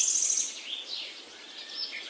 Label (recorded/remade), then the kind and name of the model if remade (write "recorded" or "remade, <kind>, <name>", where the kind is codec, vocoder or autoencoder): recorded